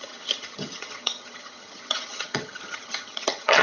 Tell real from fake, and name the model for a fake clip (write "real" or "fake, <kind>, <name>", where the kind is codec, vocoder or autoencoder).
fake, vocoder, HiFi-GAN